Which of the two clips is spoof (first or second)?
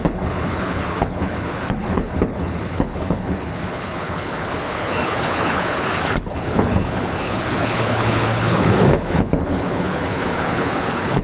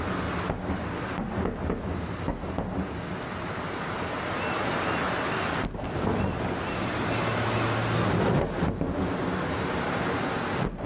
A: first